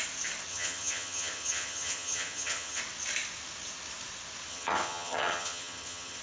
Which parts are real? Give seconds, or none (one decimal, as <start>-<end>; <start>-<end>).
0.0-0.5; 2.8-4.5